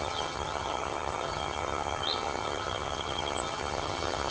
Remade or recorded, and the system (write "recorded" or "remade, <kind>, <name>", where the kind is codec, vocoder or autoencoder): remade, vocoder, HiFi-GAN